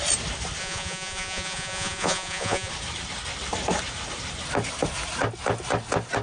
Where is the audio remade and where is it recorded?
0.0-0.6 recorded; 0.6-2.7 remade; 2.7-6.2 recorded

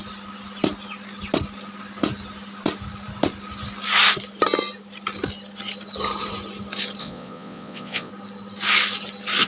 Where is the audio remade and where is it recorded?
0.0-7.0 recorded; 7.0-8.1 remade; 8.1-9.5 recorded

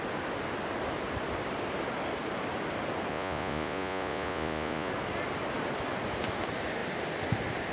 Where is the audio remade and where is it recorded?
0.0-3.1 recorded; 3.1-4.9 remade; 4.9-7.7 recorded

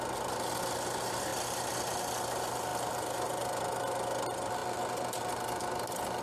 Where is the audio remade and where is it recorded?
0.0-6.2 recorded

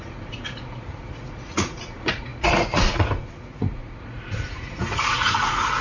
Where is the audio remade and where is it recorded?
0.0-5.8 remade